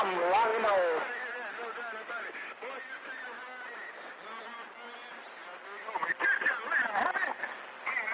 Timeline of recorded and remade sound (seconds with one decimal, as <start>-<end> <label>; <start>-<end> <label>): 0.0-8.1 recorded